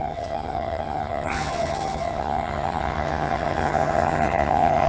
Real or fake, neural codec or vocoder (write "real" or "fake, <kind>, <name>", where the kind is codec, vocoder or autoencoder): fake, vocoder, HiFi-GAN